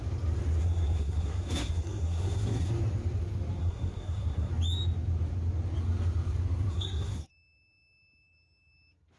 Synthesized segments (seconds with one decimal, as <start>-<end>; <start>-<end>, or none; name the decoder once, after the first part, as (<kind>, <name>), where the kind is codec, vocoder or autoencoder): 0.6-2.7 (codec, SNAC); 3.6-4.5; 6.7-7.3